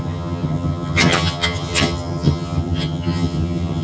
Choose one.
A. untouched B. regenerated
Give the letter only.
B